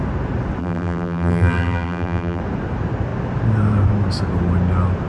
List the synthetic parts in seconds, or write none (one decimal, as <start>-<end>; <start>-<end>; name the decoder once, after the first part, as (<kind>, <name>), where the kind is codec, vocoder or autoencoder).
0.6-2.4 (vocoder, BigVGAN v2)